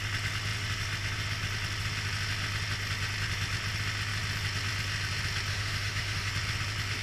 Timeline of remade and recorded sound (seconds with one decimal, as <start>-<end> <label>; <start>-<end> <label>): 0.0-5.5 recorded; 5.5-6.3 remade; 6.3-7.0 recorded